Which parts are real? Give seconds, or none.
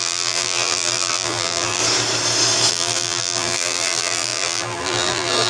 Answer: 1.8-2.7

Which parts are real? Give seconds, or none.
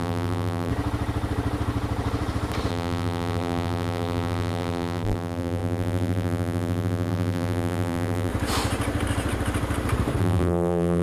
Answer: 0.7-2.7; 8.3-10.2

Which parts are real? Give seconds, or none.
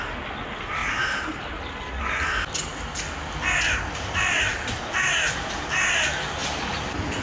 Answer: 0.0-0.8; 1.8-6.4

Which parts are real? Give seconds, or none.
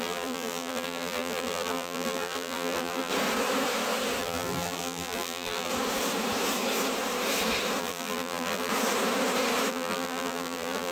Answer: 3.1-4.2; 5.7-7.8; 8.7-9.7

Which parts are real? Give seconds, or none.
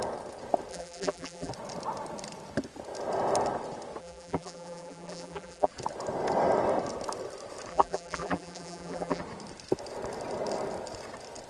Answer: 0.0-0.7; 1.5-4.0; 5.7-7.7; 9.2-11.5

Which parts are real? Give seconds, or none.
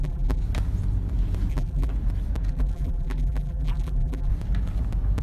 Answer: 0.4-1.5; 1.9-2.5; 4.3-5.2